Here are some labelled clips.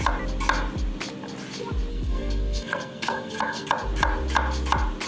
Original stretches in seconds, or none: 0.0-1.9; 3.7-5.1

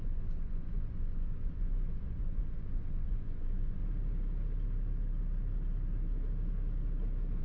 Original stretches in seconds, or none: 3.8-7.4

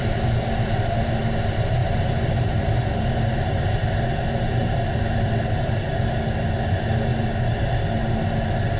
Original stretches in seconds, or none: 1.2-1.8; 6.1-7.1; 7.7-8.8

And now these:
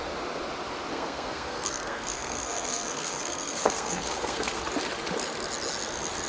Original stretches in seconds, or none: 0.0-0.9; 4.6-6.3